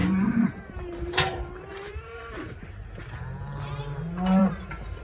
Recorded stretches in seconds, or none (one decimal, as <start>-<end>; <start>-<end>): 3.0-4.4